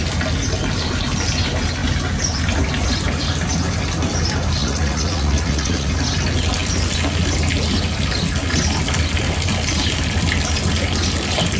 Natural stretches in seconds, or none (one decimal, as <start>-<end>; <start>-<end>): 0.0-4.6; 5.9-11.6